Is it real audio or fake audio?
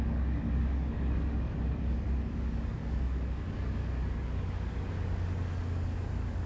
fake